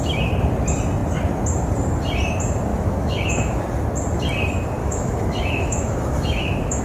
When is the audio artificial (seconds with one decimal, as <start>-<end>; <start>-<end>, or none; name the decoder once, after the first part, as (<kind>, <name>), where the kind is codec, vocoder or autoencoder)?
2.7-3.6 (autoencoder, DAC-VAE); 4.8-6.8